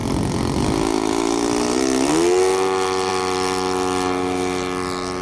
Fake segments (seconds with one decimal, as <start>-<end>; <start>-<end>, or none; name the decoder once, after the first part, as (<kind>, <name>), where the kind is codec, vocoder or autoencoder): none